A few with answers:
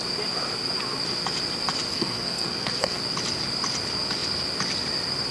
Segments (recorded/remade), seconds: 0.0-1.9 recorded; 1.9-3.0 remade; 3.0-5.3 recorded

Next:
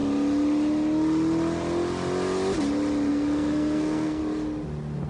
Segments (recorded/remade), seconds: 0.0-3.1 recorded; 3.1-4.2 remade; 4.2-5.1 recorded

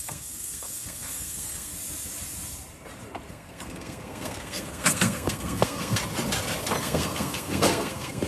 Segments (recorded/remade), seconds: 0.0-1.7 remade; 1.7-3.3 recorded; 3.3-6.0 remade; 6.0-6.8 recorded; 6.8-8.3 remade

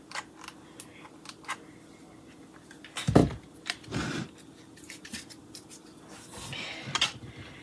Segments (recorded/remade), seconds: 0.0-7.6 recorded

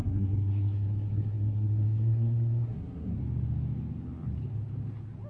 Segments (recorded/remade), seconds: 0.0-3.2 remade; 3.2-5.3 recorded